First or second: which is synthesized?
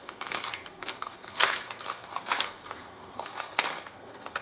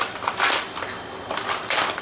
first